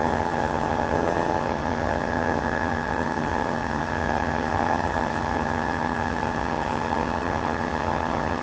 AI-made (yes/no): yes